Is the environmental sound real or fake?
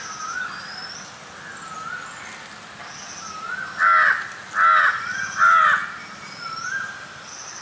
real